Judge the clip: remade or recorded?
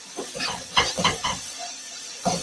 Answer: remade